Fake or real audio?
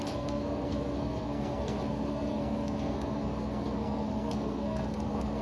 fake